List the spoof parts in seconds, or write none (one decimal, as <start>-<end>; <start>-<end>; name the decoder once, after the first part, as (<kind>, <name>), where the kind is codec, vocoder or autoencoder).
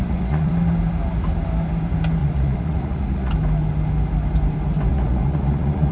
0.0-0.5 (vocoder, Vocos); 2.2-3.3; 4.9-5.9